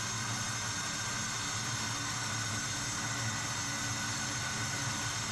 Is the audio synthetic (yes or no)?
no